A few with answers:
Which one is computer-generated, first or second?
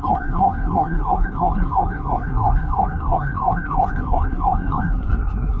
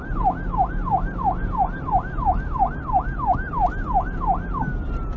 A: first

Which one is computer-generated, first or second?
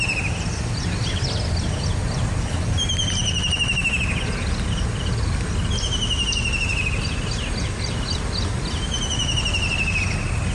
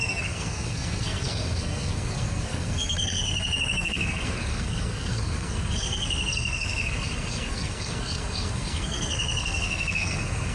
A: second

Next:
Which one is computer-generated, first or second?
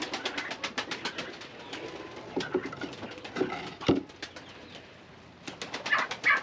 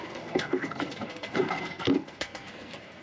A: second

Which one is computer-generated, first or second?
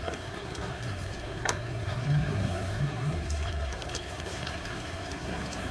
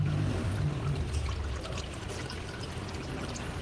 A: first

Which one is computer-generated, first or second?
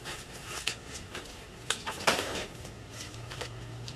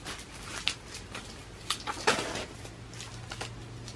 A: first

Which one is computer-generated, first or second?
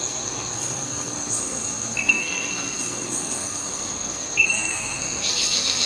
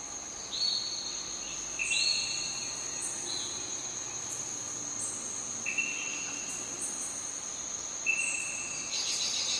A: first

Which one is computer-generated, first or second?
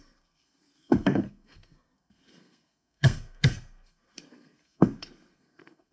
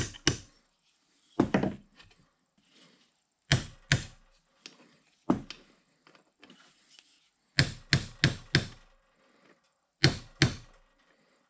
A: first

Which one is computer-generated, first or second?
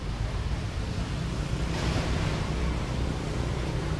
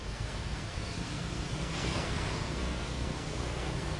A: second